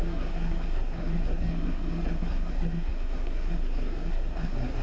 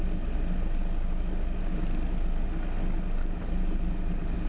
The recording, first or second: second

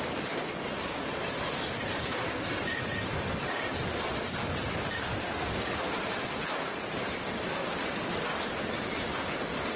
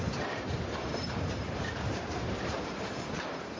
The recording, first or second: first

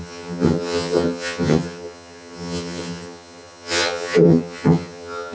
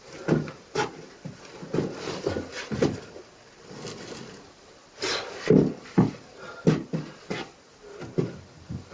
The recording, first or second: second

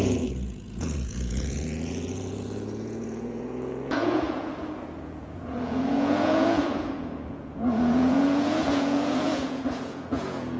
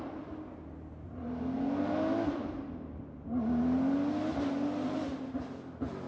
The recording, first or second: second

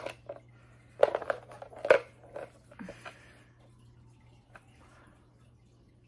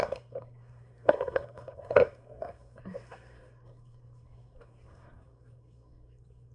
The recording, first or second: first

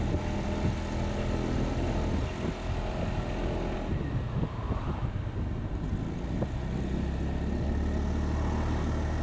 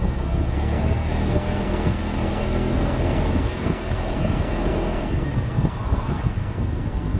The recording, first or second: first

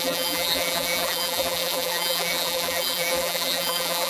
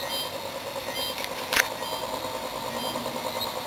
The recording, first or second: second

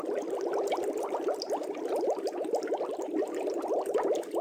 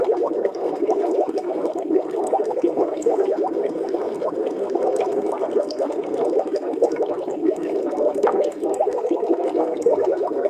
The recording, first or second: first